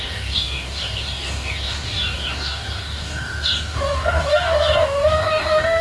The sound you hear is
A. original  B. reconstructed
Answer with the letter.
B